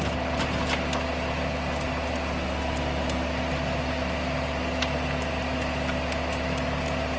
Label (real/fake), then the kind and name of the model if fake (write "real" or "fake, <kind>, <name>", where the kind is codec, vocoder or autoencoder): real